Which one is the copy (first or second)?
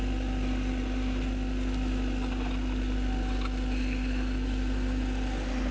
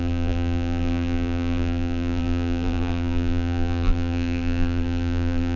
second